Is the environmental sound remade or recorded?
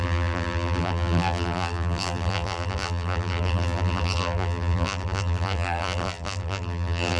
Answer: remade